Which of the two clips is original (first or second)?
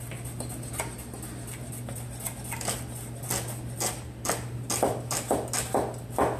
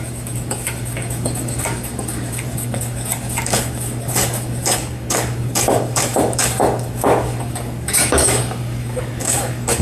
first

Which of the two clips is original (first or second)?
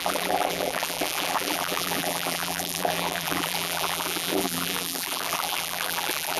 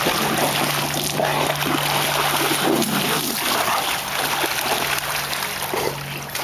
second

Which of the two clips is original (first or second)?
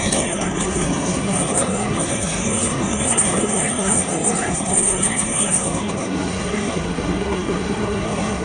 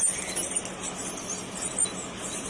second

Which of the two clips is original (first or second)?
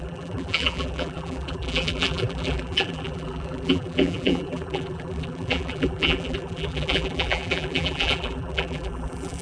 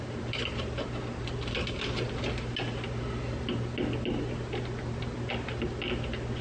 second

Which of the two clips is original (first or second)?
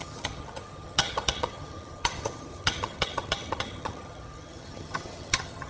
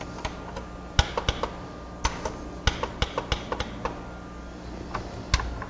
second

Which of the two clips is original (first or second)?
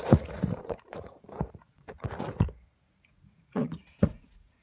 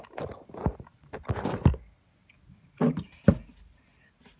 second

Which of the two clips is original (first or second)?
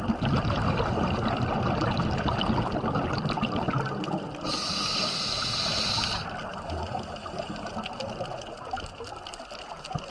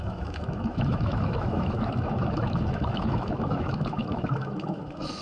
first